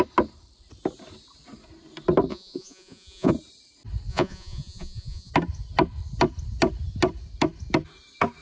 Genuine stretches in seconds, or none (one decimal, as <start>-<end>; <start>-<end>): 0.0-2.3; 3.3-4.1; 5.3-8.4